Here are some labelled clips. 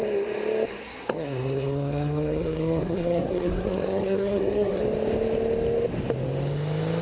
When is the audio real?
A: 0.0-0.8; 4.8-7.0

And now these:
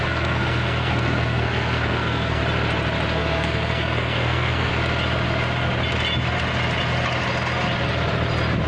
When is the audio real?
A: 2.4-3.1; 4.7-8.7

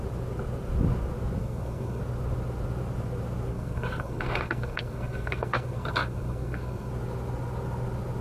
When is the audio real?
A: 0.0-1.4; 2.0-3.5; 6.9-8.2

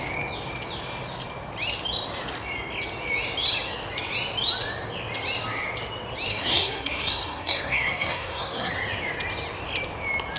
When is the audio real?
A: 0.0-6.3; 8.7-10.4